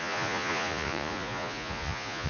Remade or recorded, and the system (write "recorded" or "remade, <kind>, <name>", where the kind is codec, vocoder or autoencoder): remade, vocoder, Vocos